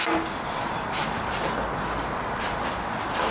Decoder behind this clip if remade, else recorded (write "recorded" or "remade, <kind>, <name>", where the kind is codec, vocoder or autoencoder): recorded